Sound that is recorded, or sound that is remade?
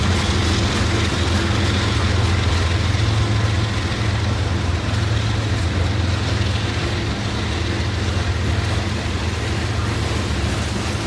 recorded